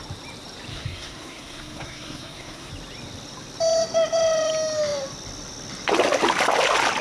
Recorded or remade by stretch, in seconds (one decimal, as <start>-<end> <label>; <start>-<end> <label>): 0.0-0.7 recorded; 0.7-2.7 remade; 2.7-7.0 recorded